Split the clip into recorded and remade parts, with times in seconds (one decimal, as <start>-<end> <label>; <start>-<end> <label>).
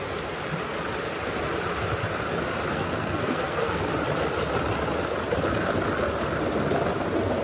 0.0-2.7 recorded; 2.7-3.8 remade; 3.8-7.4 recorded